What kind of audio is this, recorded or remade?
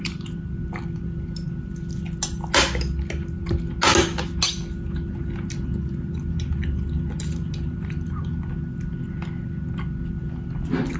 recorded